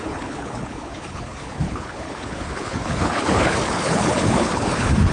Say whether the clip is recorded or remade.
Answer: remade